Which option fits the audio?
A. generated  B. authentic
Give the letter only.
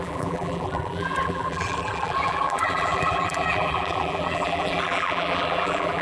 A